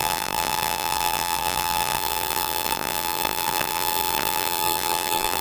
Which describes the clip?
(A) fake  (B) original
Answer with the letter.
A